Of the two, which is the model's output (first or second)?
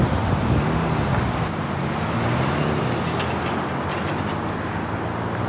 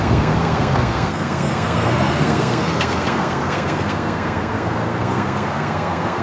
second